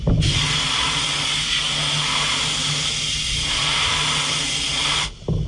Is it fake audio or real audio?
real